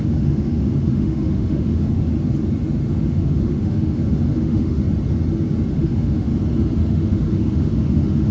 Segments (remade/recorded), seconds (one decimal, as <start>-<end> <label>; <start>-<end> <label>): 0.0-2.1 remade; 2.1-2.9 recorded; 2.9-4.8 remade; 4.8-5.7 recorded; 5.7-6.3 remade; 6.3-6.9 recorded; 6.9-8.3 remade